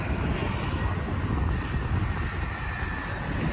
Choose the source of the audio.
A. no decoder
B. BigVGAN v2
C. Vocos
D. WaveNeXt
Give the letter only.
A